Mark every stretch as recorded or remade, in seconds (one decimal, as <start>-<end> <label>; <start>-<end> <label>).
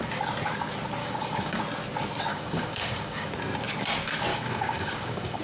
0.0-1.0 recorded; 1.0-1.6 remade; 1.6-2.3 recorded; 2.3-3.3 remade; 3.3-4.3 recorded; 4.3-5.4 remade